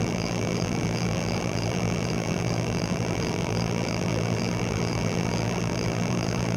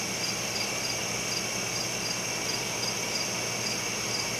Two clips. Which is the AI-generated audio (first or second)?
first